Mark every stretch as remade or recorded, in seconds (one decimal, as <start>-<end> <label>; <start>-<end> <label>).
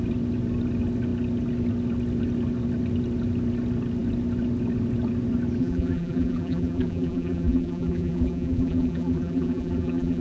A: 0.0-5.6 recorded; 5.6-10.2 remade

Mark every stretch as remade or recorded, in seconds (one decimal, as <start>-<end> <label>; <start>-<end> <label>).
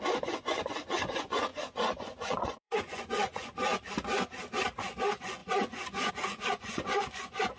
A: 0.0-3.7 remade; 3.7-4.8 recorded; 4.8-7.6 remade